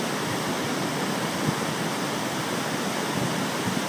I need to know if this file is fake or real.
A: real